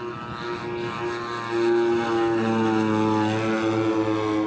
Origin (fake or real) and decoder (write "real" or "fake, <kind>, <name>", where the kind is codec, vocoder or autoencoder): real